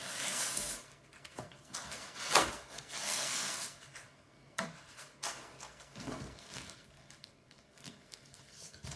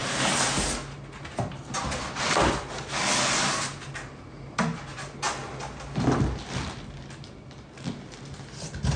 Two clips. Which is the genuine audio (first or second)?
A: second